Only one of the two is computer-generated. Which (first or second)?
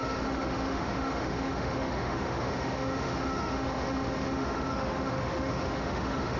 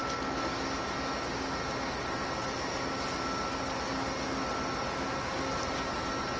first